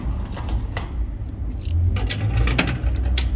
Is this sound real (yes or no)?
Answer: yes